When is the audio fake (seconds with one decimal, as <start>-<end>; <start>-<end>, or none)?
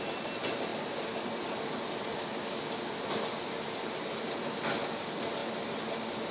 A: none